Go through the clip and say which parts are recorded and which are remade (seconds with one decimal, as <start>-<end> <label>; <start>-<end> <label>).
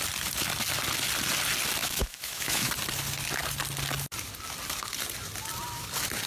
0.0-1.8 recorded; 1.8-2.7 remade; 2.7-6.3 recorded